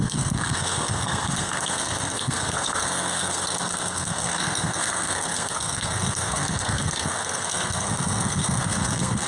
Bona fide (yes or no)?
no